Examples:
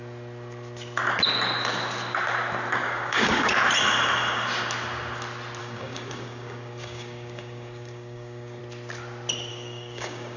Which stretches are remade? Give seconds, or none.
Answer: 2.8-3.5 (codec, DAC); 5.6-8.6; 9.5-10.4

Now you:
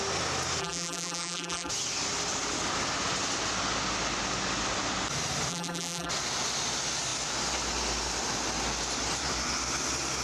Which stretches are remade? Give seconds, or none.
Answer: 0.6-1.7 (vocoder, BigVGAN v2); 5.5-6.1

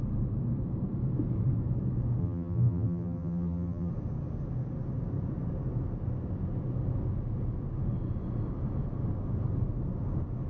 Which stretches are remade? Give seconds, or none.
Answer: 2.2-3.9 (vocoder, BigVGAN v2)

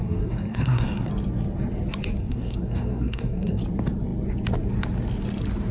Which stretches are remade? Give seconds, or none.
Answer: 0.0-1.1 (codec, SNAC); 2.2-3.6

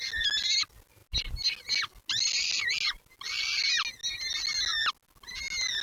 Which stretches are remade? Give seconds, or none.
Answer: none

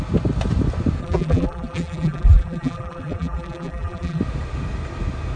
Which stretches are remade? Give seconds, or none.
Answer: 1.0-4.2 (vocoder, BigVGAN v2)

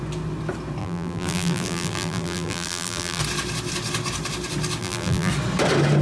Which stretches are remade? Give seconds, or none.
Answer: 0.8-3.2 (vocoder, BigVGAN v2); 4.8-5.3